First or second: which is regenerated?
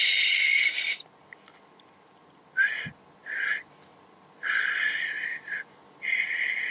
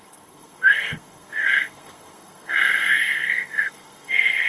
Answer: second